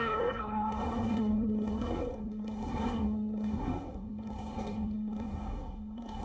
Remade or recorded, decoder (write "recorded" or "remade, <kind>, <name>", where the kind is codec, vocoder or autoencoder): remade, codec, SNAC